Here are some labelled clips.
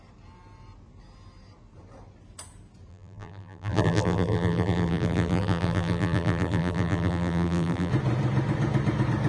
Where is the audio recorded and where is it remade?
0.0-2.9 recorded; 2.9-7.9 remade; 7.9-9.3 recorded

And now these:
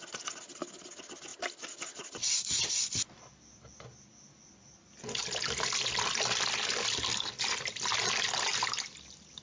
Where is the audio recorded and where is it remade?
0.0-1.3 recorded; 1.3-2.7 remade; 2.7-9.4 recorded

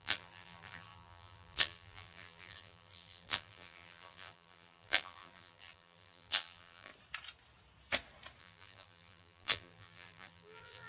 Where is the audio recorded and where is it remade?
0.0-6.9 remade; 6.9-8.4 recorded; 8.4-10.9 remade

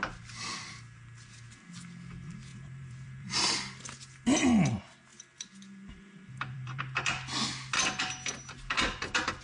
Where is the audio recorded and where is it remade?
0.0-2.5 recorded; 2.5-3.9 remade; 3.9-5.1 recorded; 5.1-6.8 remade; 6.8-9.4 recorded

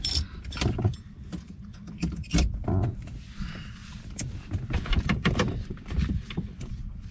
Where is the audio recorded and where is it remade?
0.0-3.8 recorded; 3.8-7.1 remade

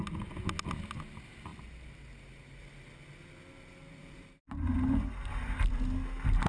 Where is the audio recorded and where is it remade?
0.0-1.5 recorded; 1.5-2.6 remade; 2.6-4.0 recorded; 4.0-4.7 remade; 4.7-6.5 recorded

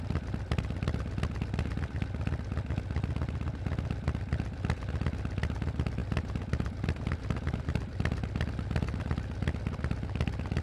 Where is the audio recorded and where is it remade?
0.0-10.6 recorded

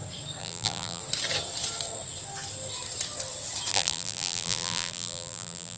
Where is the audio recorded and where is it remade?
0.0-0.4 recorded; 0.4-1.0 remade; 1.0-3.7 recorded; 3.7-5.8 remade